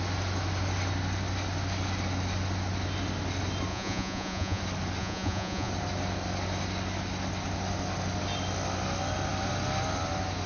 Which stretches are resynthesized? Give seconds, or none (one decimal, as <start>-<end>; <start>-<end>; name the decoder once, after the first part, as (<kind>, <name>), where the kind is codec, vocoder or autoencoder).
3.7-4.6 (vocoder, Vocos); 5.0-5.7